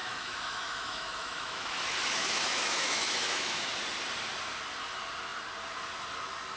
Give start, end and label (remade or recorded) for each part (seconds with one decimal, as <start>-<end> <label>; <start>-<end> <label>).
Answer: 0.0-3.7 remade; 3.7-6.6 recorded